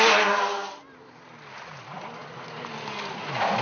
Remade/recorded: recorded